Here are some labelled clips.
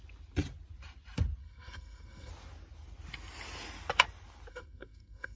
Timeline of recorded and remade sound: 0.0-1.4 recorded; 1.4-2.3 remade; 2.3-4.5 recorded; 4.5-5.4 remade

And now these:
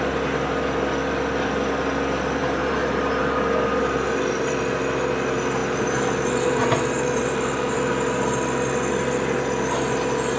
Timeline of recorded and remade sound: 0.0-10.4 recorded

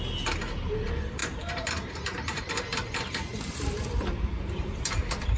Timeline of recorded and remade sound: 0.0-1.2 recorded; 1.2-2.5 remade; 2.5-3.3 recorded; 3.3-4.8 remade; 4.8-5.4 recorded

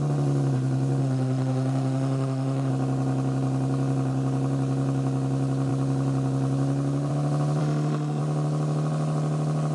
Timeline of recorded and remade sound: 0.0-1.0 recorded; 1.0-2.7 remade; 2.7-7.6 recorded; 7.6-8.2 remade; 8.2-9.7 recorded